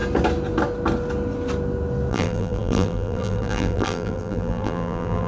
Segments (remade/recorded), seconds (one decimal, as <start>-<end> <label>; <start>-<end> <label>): 0.0-2.1 recorded; 2.1-5.3 remade